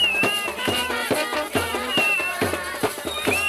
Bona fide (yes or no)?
no